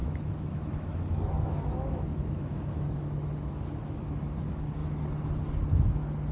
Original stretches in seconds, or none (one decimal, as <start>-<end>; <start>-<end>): 3.8-6.3